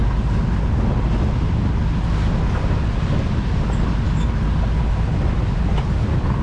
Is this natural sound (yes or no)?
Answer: yes